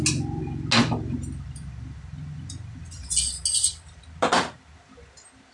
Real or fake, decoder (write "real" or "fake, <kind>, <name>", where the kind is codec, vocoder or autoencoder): real